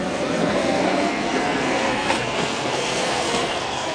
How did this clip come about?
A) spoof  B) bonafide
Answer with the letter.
A